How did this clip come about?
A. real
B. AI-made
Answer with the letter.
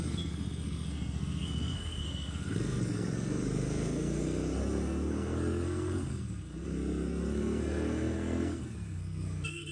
B